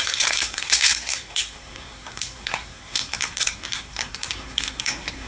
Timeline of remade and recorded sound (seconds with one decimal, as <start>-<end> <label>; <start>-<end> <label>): 0.0-5.3 remade